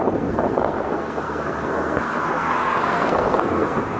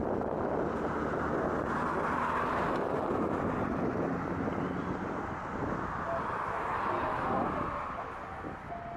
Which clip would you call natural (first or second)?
second